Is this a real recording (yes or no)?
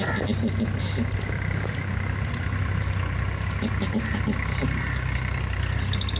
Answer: yes